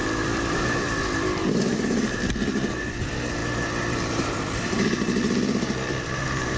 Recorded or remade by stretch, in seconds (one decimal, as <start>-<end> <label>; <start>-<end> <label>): 0.0-6.6 remade